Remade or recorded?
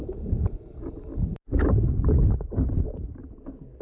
recorded